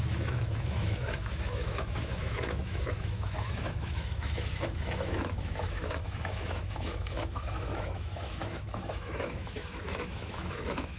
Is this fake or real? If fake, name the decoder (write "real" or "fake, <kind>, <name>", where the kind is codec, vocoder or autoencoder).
fake, autoencoder, DAC-VAE